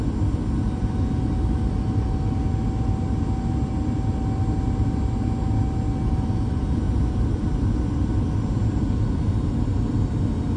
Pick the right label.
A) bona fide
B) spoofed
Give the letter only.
A